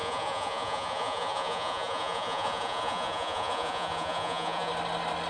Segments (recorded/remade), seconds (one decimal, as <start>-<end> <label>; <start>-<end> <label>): 0.0-4.7 remade; 4.7-5.3 recorded